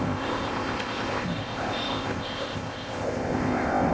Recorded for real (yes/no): no